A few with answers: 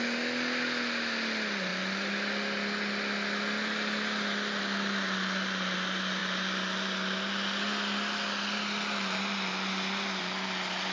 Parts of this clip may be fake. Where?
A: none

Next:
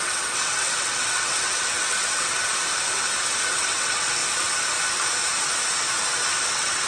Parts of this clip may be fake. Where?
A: 0.0-2.4 (vocoder, WaveNeXt); 3.4-4.2; 6.5-6.9

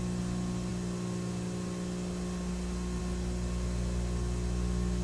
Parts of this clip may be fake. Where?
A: none

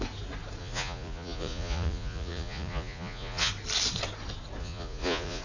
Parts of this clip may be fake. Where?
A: 0.6-3.5 (vocoder, Vocos); 4.6-5.4

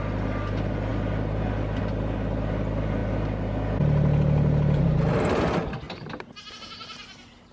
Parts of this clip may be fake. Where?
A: none